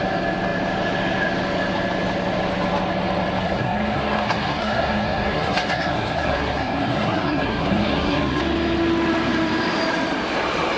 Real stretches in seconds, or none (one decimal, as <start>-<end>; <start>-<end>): 0.0-3.4; 8.4-10.8